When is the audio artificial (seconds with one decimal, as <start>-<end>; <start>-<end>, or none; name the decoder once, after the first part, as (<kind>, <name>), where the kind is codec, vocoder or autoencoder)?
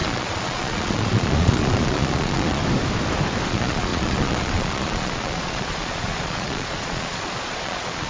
0.0-2.6 (vocoder, Vocos); 3.5-8.1